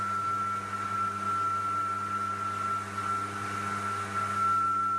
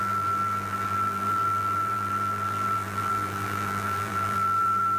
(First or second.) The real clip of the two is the first